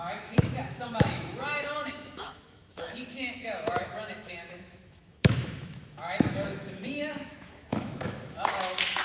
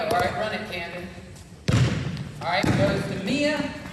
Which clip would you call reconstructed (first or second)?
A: first